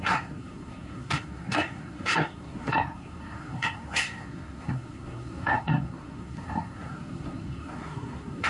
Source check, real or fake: fake